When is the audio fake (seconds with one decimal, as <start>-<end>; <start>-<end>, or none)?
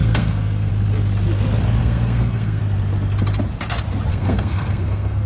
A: 0.0-0.7; 1.8-2.6; 4.1-5.3